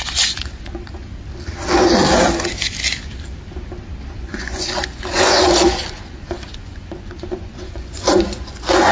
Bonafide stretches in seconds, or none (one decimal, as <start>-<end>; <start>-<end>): 1.1-4.1